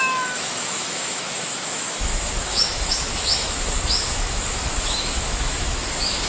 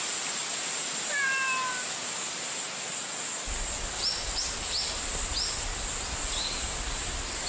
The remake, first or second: first